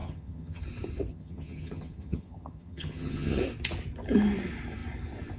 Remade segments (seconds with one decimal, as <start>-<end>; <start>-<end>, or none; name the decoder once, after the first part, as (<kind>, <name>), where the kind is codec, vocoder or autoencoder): 0.0-0.6 (vocoder, HiFi-GAN); 1.1-3.4